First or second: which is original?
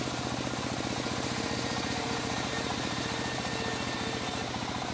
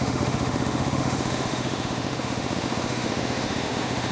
first